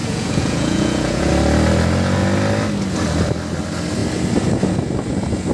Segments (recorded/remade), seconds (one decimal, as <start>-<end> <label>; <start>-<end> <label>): 0.0-1.3 remade; 1.3-5.5 recorded